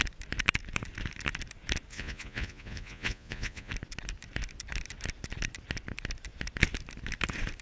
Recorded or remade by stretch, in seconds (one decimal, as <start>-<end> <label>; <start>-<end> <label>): 0.0-1.9 recorded; 1.9-3.7 remade; 3.7-7.6 recorded